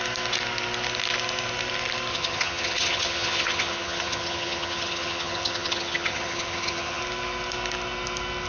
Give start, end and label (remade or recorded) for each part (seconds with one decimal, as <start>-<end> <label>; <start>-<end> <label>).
0.0-2.1 recorded; 2.1-7.0 remade; 7.0-8.5 recorded